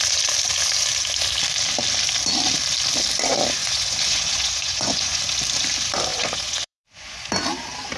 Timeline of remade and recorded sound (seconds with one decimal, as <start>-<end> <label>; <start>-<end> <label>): 0.0-3.6 recorded; 3.6-5.2 remade; 5.2-6.1 recorded; 6.1-7.3 remade; 7.3-8.0 recorded